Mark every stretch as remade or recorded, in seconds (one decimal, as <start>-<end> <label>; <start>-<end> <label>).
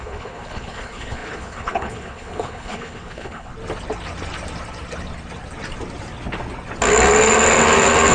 0.0-3.5 remade; 3.5-8.1 recorded